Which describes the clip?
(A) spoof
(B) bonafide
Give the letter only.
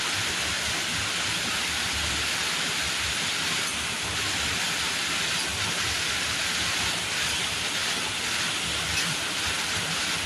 B